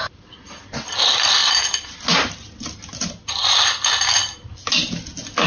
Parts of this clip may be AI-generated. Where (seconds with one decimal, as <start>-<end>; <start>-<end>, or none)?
none